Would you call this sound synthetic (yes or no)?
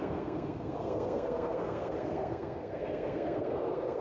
yes